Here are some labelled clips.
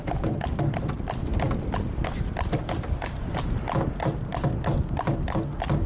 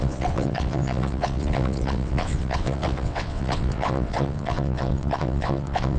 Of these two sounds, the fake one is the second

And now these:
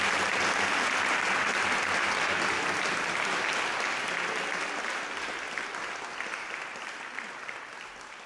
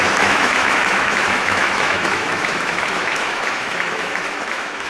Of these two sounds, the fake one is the second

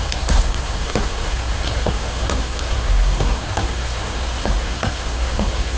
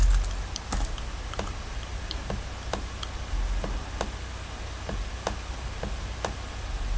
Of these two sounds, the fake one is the first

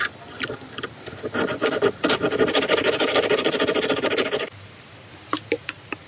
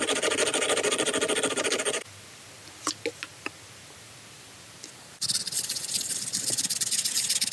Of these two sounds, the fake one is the first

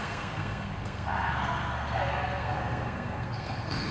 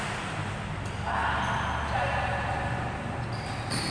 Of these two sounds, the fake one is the first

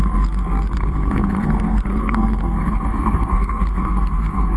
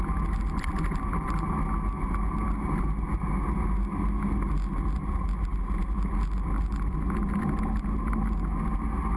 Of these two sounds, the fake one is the first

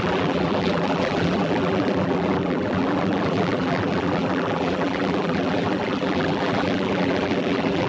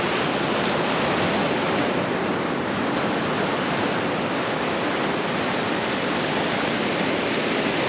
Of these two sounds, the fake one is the first